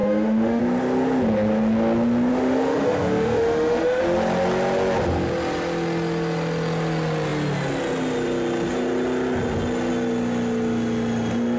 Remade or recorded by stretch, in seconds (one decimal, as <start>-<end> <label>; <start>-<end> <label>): 0.0-0.6 remade; 0.6-2.3 recorded; 2.3-4.0 remade; 4.0-11.6 recorded